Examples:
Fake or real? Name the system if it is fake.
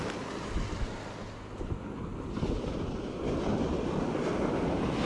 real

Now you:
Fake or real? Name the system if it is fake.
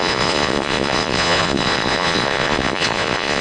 fake, vocoder, Vocos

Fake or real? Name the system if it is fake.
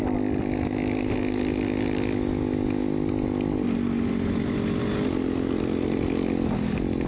real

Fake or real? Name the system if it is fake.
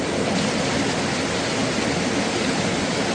real